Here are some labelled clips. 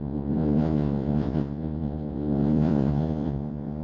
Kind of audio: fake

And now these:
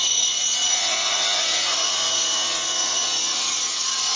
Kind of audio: fake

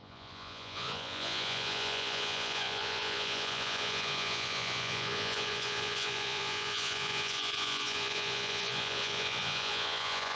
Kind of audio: fake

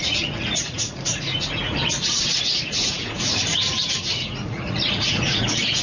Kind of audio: fake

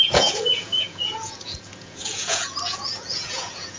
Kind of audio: fake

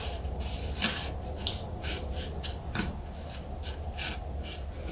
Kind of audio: real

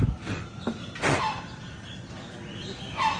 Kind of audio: real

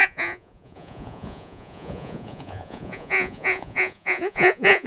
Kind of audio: fake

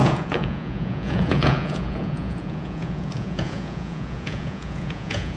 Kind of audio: fake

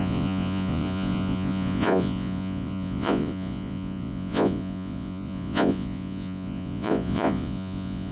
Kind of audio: fake